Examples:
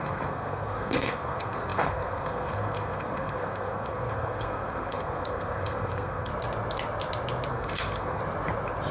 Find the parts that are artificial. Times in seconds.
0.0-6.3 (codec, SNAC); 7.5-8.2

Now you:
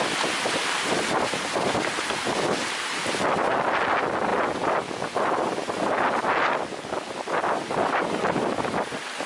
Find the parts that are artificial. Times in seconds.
4.3-5.2 (vocoder, BigVGAN v2)

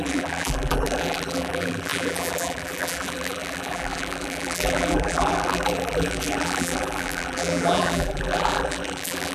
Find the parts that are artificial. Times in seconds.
0.0-9.3 (vocoder, BigVGAN v2)

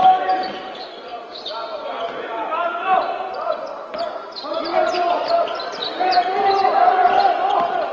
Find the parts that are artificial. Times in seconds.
none

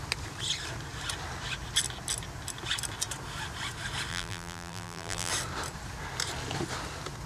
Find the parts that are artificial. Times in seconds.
4.1-5.3 (vocoder, BigVGAN v2)

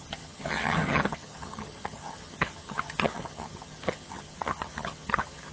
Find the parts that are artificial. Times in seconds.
0.0-5.5 (vocoder, HiFi-GAN)